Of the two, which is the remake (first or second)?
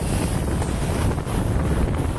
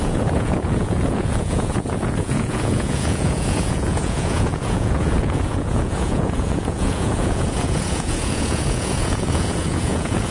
second